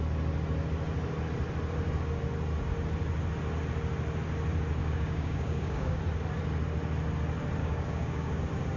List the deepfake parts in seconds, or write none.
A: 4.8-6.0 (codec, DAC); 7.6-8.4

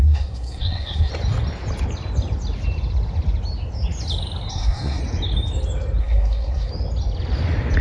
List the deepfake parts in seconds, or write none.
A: 0.0-1.1 (codec, SNAC); 4.5-5.0; 6.0-6.7

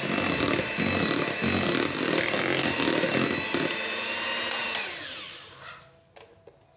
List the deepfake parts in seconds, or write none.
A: none